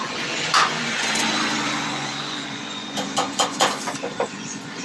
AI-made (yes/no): yes